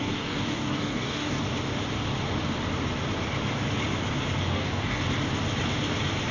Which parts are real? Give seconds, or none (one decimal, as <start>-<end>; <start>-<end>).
1.4-4.5; 5.0-6.3